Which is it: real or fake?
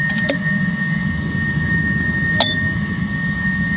real